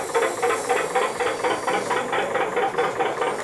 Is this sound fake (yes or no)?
no